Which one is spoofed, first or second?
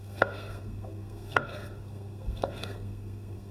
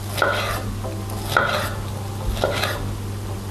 first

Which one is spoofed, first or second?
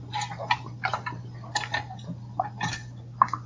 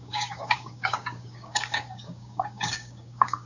second